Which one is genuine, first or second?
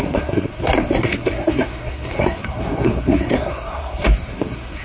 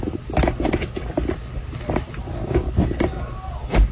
second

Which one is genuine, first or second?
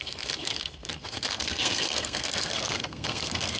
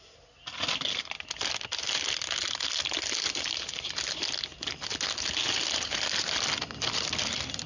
second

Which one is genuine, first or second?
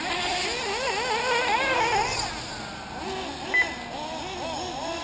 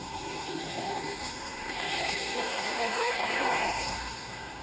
first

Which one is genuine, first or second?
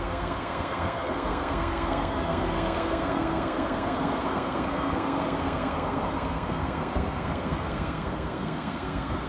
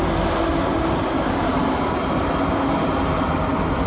second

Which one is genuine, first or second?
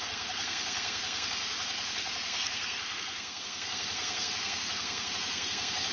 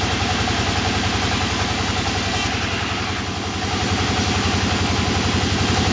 second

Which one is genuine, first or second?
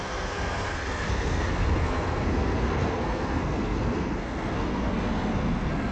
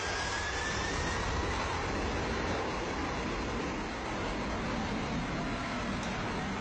second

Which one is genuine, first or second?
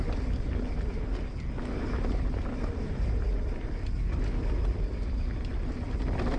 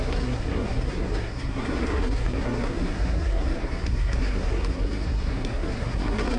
first